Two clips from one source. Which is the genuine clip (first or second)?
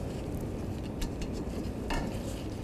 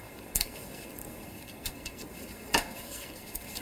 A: first